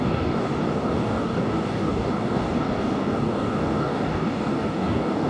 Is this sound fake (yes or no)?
yes